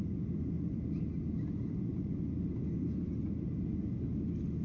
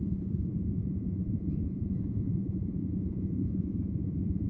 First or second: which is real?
first